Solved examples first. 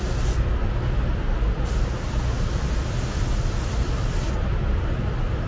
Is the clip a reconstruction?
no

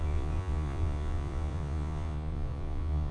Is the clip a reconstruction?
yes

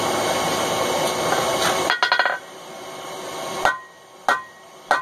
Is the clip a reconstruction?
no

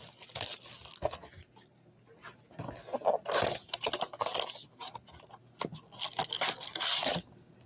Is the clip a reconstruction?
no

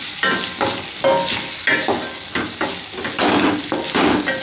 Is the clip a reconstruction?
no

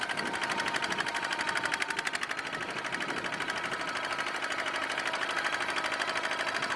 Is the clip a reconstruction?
no